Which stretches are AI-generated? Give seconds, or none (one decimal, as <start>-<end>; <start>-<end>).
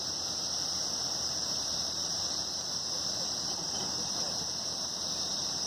0.8-4.2